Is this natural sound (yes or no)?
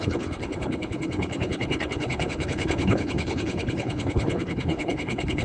no